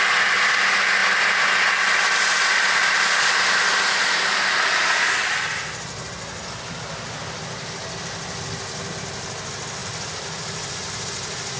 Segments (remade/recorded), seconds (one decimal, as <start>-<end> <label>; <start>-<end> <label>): 0.0-11.6 recorded